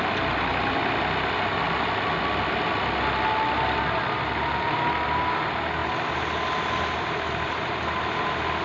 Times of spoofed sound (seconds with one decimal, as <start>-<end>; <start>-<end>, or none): none